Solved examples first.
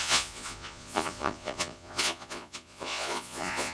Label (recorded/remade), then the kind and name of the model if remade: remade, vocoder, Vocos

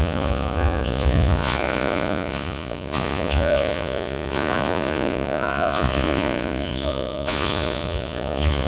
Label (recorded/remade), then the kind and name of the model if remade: remade, vocoder, Vocos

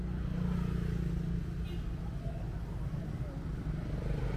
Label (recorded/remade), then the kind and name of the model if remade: recorded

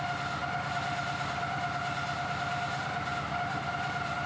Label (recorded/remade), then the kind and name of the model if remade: recorded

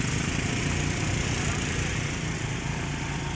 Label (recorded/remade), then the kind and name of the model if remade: recorded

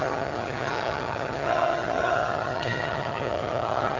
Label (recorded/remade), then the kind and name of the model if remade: remade, vocoder, HiFi-GAN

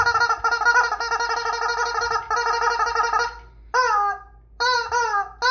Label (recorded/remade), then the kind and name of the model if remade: recorded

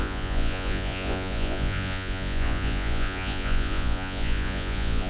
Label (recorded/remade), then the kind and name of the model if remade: remade, vocoder, Vocos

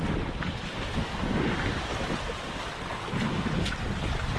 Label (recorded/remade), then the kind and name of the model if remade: recorded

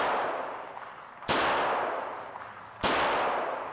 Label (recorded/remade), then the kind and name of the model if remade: recorded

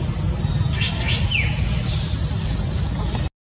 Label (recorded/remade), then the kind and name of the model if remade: recorded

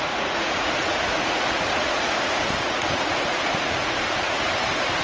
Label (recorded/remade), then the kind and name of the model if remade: remade, vocoder, Vocos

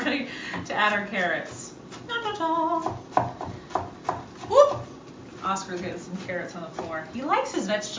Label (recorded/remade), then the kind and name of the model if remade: recorded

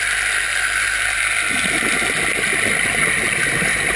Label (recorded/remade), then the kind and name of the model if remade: recorded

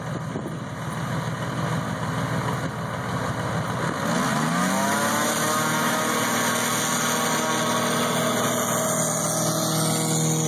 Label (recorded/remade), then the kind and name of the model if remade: recorded